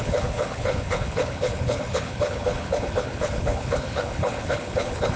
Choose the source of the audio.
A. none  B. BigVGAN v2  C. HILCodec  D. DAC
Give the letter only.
C